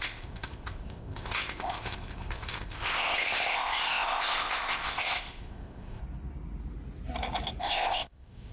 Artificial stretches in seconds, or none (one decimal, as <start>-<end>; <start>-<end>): 0.0-6.0; 7.6-8.5